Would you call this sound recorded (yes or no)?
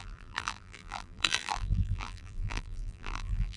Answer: no